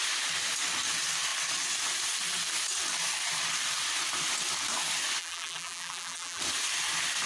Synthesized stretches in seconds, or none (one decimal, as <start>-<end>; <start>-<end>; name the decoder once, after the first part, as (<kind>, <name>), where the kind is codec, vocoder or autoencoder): 5.2-6.4 (vocoder, BigVGAN v2)